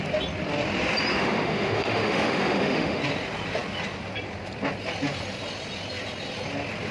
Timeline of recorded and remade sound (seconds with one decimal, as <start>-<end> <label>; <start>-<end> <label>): 0.0-1.1 recorded; 1.1-3.0 remade; 3.0-6.9 recorded